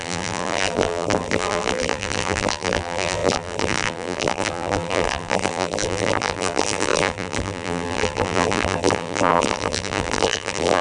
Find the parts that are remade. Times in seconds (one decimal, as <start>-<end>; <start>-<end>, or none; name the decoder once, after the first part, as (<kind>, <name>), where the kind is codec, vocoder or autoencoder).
0.0-10.8 (vocoder, BigVGAN v2)